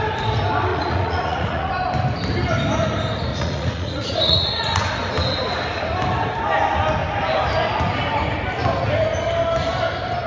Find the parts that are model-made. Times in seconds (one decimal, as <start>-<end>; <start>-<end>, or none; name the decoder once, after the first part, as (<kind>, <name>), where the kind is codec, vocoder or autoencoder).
0.7-1.7 (vocoder, Vocos); 3.3-4.9